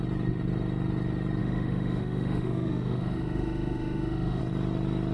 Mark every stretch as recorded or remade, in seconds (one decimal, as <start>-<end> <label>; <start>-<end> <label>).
0.0-1.4 recorded; 1.4-4.4 remade; 4.4-5.1 recorded